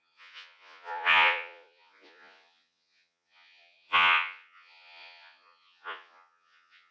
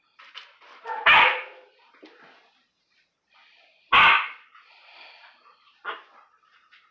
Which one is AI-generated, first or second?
first